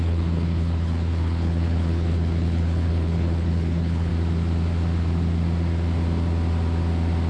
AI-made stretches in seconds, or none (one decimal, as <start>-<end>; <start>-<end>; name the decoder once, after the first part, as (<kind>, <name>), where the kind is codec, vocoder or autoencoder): 0.0-4.1 (codec, HILCodec)